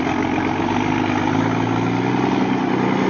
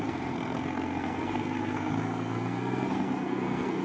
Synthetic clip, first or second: second